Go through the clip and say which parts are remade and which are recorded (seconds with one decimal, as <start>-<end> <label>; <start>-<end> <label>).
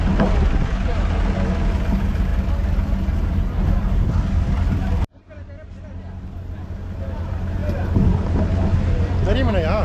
0.0-9.8 recorded